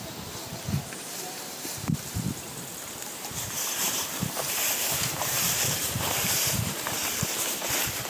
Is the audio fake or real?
fake